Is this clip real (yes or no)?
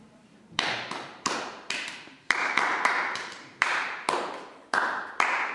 no